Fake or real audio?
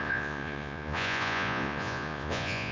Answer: fake